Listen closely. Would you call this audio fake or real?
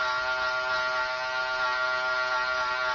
real